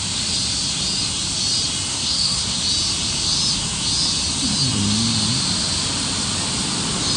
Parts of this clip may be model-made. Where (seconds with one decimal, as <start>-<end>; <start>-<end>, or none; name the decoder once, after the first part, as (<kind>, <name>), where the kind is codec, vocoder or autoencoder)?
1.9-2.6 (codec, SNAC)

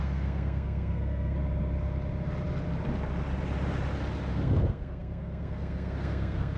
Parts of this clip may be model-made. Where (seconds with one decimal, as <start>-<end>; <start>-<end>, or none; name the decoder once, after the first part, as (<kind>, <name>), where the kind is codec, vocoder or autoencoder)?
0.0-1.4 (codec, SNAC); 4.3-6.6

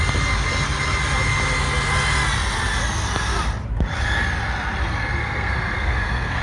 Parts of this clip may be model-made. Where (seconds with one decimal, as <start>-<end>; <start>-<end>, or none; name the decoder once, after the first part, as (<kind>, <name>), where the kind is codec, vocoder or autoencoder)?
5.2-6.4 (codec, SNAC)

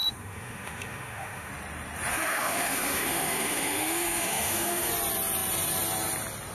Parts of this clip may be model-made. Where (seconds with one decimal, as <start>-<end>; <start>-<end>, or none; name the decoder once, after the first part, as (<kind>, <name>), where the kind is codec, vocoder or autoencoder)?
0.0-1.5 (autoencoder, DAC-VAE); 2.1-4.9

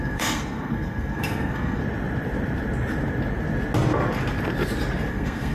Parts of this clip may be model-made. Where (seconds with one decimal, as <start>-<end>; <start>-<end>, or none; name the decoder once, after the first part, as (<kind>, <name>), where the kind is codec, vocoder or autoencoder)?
0.0-1.8 (codec, SNAC); 5.1-5.5

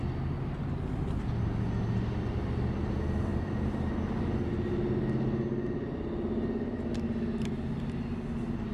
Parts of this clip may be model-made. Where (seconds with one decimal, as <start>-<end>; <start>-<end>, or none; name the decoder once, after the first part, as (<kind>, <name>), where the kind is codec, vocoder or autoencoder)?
3.3-3.9 (vocoder, BigVGAN v2)